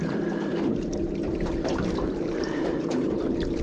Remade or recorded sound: remade